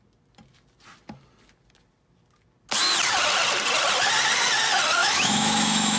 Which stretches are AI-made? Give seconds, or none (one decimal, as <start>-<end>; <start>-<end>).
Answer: 5.0-6.0